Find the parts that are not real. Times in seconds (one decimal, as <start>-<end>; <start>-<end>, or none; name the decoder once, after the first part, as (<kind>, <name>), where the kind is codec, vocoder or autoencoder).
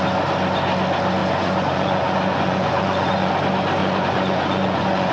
1.2-3.3 (vocoder, Vocos); 3.8-5.1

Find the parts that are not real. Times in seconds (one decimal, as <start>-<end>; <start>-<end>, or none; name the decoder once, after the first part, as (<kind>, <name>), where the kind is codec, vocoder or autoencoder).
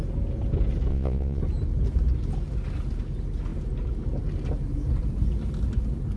0.9-1.4 (vocoder, Vocos)